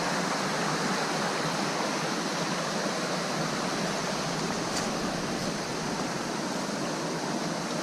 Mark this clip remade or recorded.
recorded